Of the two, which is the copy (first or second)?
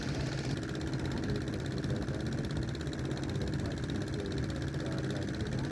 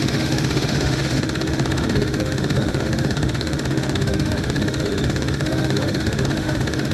second